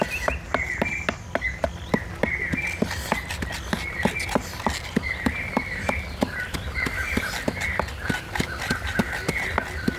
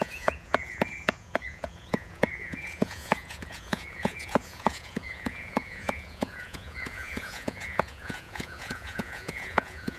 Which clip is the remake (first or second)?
second